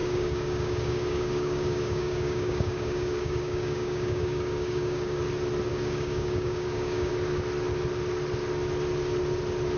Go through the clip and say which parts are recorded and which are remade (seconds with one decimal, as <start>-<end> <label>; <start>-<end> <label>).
0.0-5.2 remade; 5.2-5.7 recorded; 5.7-7.1 remade; 7.1-9.8 recorded